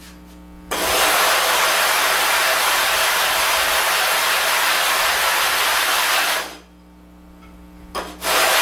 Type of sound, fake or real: real